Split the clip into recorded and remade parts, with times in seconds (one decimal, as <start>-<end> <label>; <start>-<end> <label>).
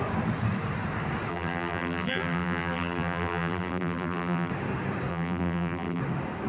0.0-1.3 recorded; 1.3-4.5 remade; 4.5-5.1 recorded; 5.1-6.0 remade; 6.0-6.5 recorded